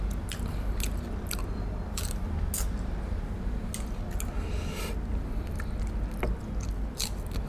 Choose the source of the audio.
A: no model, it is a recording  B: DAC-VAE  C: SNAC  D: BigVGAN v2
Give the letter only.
A